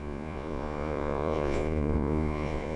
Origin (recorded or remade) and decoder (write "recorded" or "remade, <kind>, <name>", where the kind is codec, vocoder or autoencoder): remade, vocoder, Vocos